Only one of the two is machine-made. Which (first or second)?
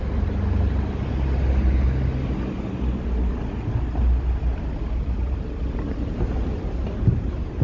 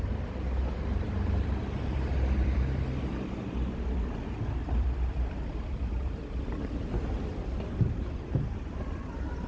second